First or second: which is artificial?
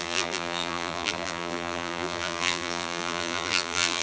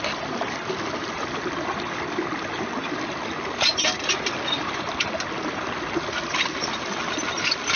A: first